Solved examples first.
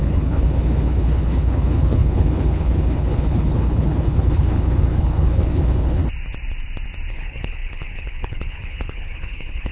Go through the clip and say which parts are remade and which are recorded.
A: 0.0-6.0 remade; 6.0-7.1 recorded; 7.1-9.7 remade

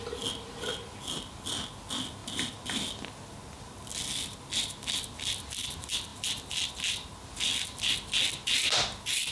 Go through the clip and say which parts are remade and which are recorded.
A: 0.0-9.3 recorded

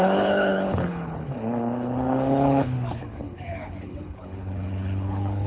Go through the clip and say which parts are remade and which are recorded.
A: 0.0-5.5 remade

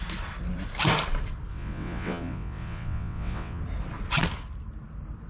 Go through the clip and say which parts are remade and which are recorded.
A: 0.0-1.5 recorded; 1.5-3.6 remade; 3.6-5.3 recorded

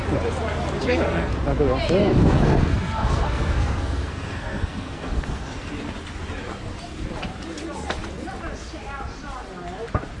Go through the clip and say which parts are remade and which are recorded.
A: 0.0-0.8 recorded; 0.8-1.4 remade; 1.4-2.0 recorded; 2.0-5.7 remade; 5.7-10.2 recorded

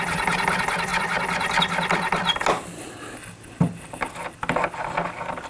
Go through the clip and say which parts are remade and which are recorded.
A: 0.0-5.5 recorded

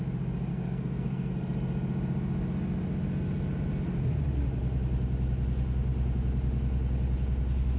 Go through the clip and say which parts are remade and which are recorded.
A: 0.0-0.5 recorded; 0.5-1.3 remade; 1.3-7.8 recorded

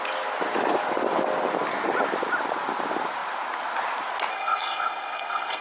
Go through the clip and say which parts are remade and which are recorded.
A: 0.0-4.3 recorded; 4.3-5.6 remade